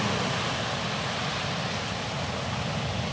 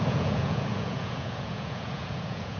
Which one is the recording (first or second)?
first